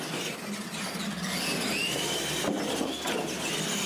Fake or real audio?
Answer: real